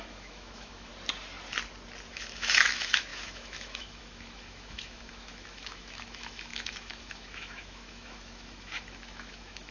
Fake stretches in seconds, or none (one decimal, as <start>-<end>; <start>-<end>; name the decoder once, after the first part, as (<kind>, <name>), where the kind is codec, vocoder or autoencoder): 0.0-0.9 (autoencoder, DAC-VAE); 2.1-9.7